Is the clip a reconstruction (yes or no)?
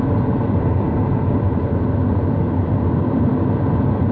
no